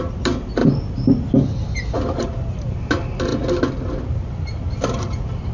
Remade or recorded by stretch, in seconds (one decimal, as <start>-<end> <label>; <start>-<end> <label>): 0.0-5.5 recorded